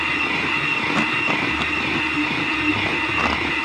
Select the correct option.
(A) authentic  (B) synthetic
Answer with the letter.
A